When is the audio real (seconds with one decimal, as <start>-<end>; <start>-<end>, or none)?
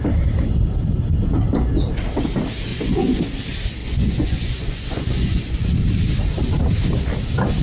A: 0.0-2.7; 3.2-3.8; 5.7-7.6